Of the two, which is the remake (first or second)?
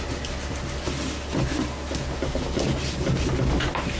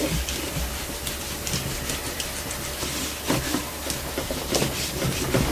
second